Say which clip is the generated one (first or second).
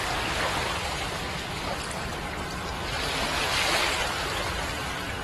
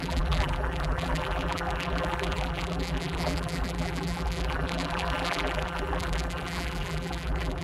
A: second